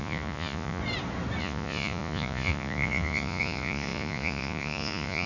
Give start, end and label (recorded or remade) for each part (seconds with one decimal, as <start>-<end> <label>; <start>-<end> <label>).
0.0-0.8 remade; 0.8-1.4 recorded; 1.4-5.3 remade